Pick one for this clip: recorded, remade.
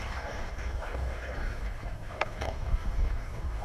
remade